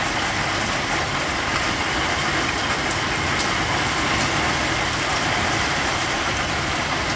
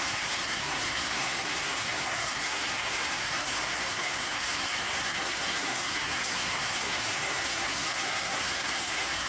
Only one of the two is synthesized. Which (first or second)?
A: second